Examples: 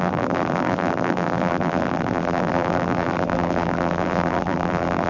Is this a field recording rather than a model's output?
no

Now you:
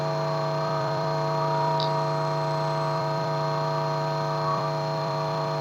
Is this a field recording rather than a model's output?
no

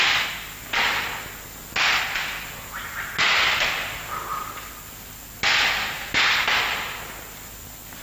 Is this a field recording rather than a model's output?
yes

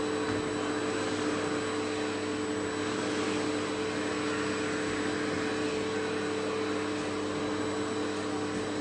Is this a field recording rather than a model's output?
yes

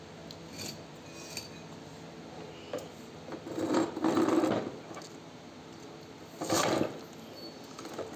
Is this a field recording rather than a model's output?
yes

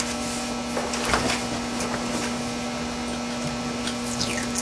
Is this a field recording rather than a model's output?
yes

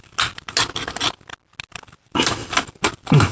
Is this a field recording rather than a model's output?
yes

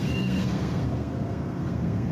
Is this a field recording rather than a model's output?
no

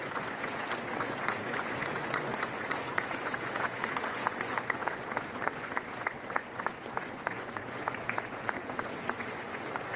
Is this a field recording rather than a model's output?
no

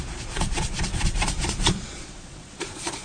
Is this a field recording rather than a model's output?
no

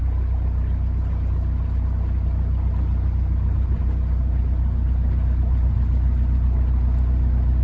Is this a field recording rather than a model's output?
yes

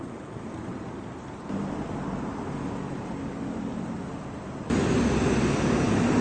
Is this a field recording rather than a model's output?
yes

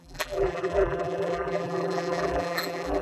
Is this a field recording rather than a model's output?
no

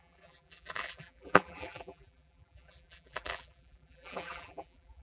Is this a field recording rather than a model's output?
no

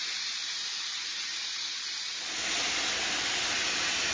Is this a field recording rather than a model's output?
yes